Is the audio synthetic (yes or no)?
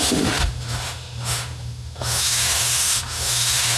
yes